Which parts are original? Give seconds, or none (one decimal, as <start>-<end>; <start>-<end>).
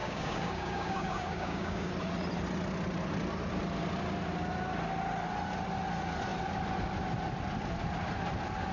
1.9-8.7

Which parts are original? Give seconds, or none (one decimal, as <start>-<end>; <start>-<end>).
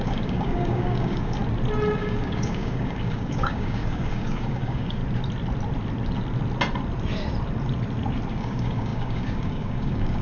1.4-2.0; 5.0-8.3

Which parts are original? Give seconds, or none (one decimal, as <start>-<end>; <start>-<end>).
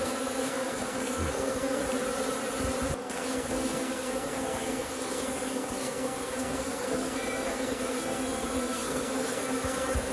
1.8-3.0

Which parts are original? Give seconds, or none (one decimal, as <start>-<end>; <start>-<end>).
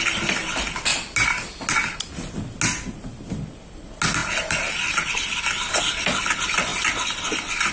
0.0-7.7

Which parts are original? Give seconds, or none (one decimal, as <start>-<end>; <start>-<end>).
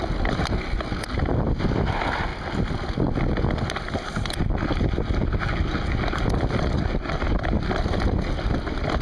0.0-9.0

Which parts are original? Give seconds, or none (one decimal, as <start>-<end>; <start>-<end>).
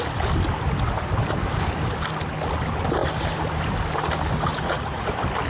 0.0-4.5; 5.1-5.5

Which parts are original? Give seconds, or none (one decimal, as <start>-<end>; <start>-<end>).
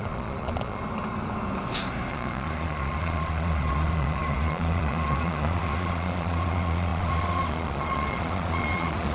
0.8-2.1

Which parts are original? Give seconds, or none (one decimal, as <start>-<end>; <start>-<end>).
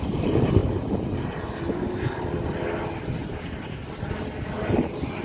0.0-3.2; 3.8-5.2